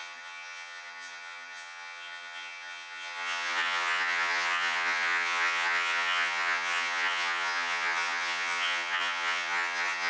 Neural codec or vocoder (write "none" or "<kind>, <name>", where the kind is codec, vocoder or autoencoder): vocoder, HiFi-GAN